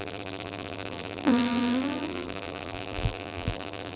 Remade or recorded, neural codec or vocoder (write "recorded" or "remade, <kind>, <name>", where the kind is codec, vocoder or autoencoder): remade, vocoder, BigVGAN v2